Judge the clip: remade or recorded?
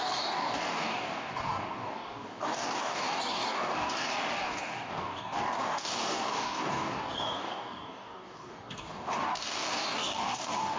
remade